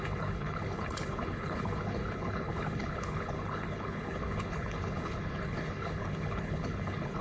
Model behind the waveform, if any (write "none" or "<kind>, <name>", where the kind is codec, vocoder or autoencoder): codec, HILCodec